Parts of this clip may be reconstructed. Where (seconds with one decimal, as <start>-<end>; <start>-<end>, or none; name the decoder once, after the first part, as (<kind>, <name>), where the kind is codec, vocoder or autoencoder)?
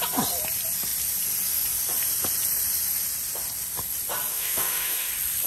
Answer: 4.3-5.1 (autoencoder, DAC-VAE)